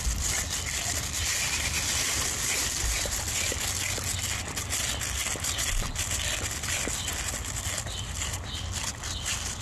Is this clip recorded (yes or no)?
yes